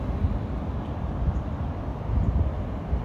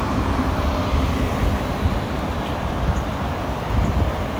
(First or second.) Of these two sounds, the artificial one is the second